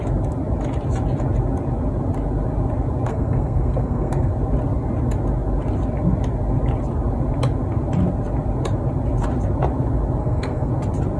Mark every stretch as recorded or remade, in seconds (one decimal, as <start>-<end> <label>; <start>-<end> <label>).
0.0-3.1 recorded; 3.1-4.3 remade; 4.3-10.2 recorded; 10.2-10.7 remade; 10.7-11.2 recorded